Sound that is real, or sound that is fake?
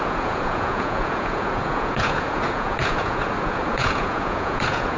fake